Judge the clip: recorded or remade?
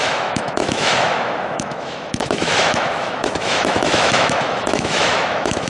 remade